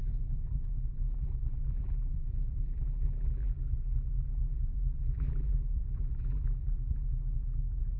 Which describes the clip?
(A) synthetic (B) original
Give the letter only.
A